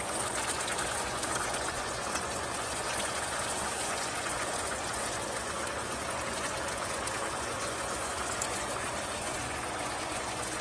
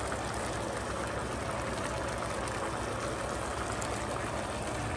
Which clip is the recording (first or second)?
second